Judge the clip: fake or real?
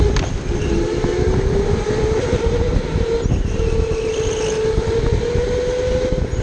real